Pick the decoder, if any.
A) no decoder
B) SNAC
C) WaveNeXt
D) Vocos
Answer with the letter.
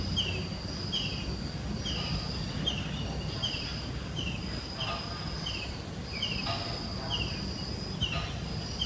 A